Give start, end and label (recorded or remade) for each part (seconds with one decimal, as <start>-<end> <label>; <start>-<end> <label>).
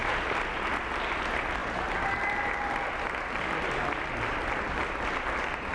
0.0-5.7 recorded